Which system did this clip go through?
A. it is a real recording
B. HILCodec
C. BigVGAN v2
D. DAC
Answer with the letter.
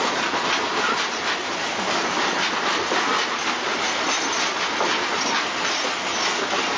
A